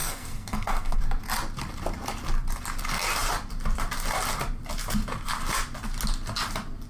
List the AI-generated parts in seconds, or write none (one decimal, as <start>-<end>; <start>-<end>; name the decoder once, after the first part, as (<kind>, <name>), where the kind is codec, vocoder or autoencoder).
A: 0.0-1.0 (codec, SNAC)

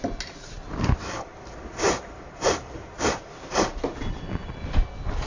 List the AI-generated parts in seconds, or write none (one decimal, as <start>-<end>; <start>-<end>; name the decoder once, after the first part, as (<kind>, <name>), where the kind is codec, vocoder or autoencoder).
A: none

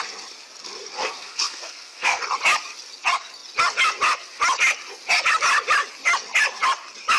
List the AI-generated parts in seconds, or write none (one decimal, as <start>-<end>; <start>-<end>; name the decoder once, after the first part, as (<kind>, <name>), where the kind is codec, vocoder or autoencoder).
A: 1.0-2.2 (codec, SNAC)

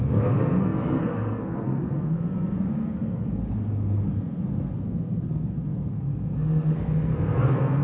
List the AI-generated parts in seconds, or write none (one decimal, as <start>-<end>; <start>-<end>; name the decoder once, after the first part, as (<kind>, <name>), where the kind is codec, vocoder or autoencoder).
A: 0.0-7.8 (codec, SNAC)

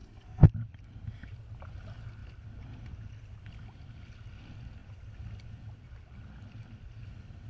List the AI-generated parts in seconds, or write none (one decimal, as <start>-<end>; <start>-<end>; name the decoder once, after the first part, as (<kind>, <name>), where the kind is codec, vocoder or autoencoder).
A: 0.0-0.5 (codec, SNAC)

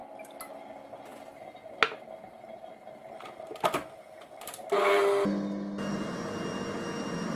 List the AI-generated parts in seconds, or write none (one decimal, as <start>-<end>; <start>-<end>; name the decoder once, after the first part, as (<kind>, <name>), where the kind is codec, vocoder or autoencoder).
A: none